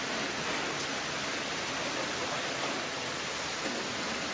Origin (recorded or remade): recorded